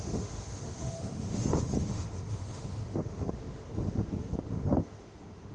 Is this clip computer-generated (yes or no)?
yes